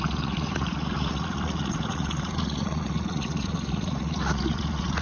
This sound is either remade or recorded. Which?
remade